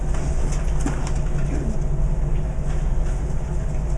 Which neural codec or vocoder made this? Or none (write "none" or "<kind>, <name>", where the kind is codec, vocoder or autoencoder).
none